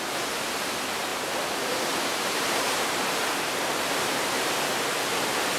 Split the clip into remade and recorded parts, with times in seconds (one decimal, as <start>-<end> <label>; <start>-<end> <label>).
0.0-1.1 recorded; 1.1-4.5 remade; 4.5-5.6 recorded